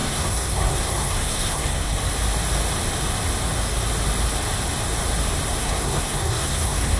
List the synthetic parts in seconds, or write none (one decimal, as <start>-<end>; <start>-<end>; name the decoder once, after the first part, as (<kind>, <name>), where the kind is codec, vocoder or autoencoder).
0.0-2.0 (codec, SNAC); 5.6-7.0